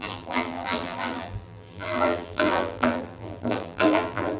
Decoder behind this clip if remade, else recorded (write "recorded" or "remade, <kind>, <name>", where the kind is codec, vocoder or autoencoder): remade, vocoder, BigVGAN v2